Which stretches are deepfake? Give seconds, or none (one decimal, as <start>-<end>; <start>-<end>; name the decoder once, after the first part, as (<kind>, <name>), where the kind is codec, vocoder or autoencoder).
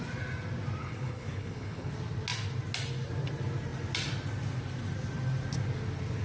0.8-1.9 (codec, HILCodec)